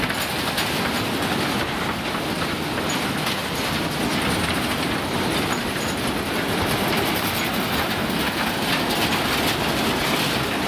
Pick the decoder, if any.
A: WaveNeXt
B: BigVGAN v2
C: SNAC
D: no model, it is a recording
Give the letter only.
D